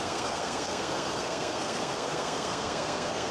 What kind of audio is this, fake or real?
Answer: fake